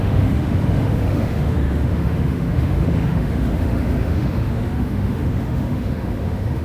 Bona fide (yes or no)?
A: no